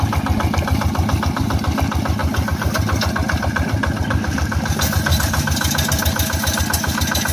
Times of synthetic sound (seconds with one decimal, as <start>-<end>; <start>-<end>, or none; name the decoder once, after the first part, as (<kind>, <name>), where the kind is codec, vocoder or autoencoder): none